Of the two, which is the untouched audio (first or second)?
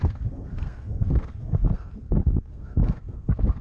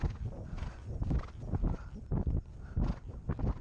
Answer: second